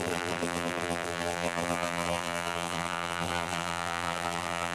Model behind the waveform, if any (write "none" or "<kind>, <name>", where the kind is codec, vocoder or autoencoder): vocoder, BigVGAN v2